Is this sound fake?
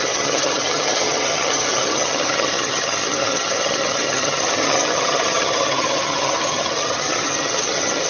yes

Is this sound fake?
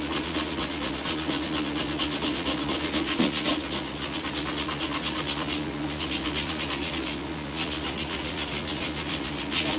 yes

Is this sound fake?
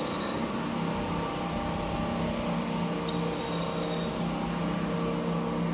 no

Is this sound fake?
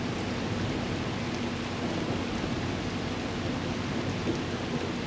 no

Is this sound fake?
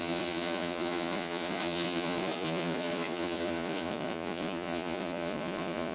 yes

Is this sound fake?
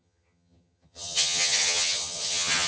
yes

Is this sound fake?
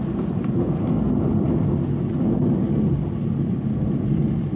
no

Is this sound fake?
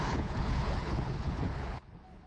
yes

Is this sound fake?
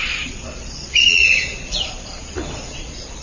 yes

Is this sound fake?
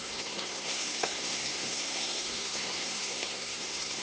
yes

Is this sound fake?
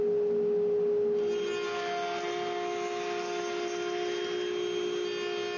no